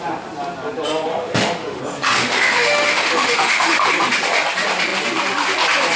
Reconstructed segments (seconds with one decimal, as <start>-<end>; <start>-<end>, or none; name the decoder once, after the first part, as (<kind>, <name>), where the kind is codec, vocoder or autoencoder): 1.1-1.8 (autoencoder, DAC-VAE); 2.2-3.9